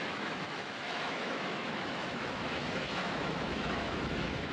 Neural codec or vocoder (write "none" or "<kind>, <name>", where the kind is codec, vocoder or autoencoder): autoencoder, DAC-VAE